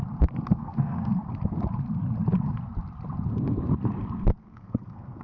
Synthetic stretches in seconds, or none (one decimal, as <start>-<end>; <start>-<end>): 0.5-1.1; 4.4-5.2